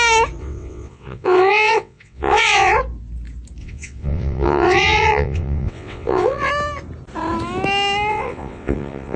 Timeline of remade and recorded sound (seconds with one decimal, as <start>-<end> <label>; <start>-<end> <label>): 0.0-0.4 recorded; 0.4-2.8 remade; 2.8-3.6 recorded; 3.6-6.5 remade; 6.5-8.1 recorded; 8.1-9.2 remade